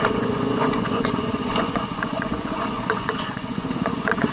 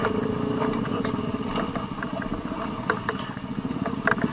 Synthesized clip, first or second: first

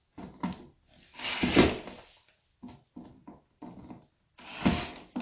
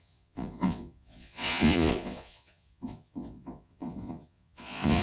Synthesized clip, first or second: second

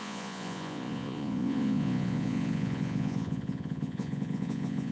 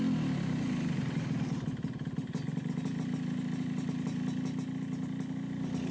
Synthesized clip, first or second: first